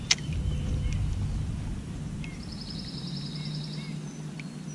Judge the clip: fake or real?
real